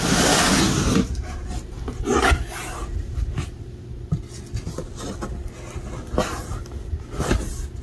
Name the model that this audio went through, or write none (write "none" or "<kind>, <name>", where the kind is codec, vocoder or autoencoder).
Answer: none